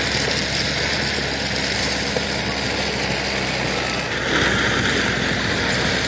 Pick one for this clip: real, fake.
real